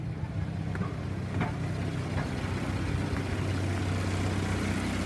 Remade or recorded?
recorded